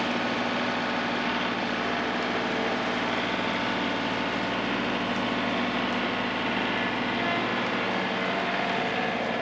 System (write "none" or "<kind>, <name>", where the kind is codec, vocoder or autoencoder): none